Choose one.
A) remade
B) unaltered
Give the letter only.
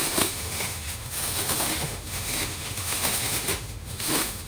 A